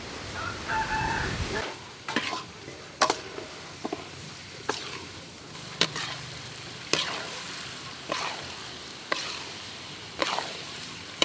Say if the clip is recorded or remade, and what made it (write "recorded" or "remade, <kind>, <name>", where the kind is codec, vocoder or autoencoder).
remade, vocoder, BigVGAN v2